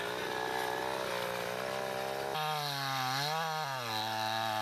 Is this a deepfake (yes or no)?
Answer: no